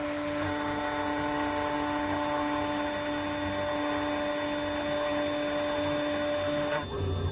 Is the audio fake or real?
real